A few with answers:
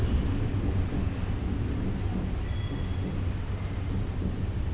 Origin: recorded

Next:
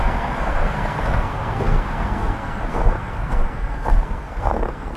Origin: remade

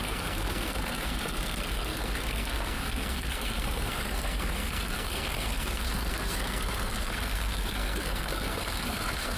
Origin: remade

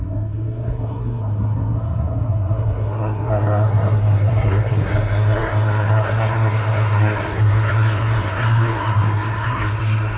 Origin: remade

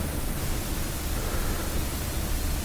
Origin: recorded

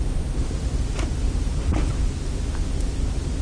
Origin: recorded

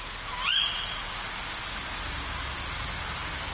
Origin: recorded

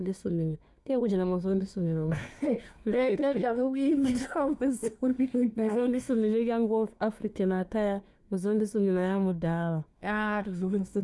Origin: remade